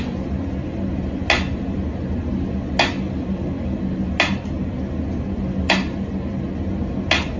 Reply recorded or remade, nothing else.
recorded